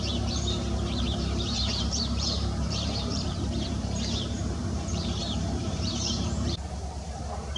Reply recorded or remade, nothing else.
remade